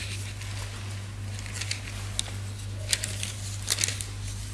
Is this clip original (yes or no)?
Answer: yes